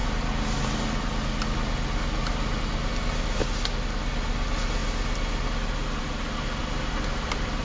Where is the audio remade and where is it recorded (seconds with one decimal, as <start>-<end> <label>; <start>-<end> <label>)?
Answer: 0.0-6.6 recorded; 6.6-7.6 remade